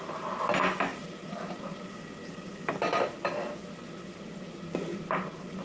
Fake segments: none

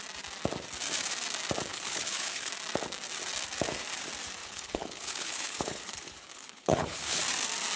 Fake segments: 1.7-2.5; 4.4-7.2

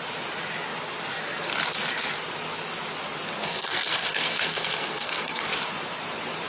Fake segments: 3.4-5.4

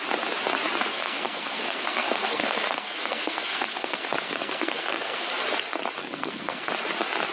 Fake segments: 0.9-5.3; 6.0-6.7

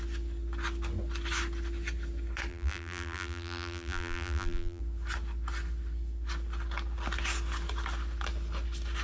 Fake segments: 2.5-4.8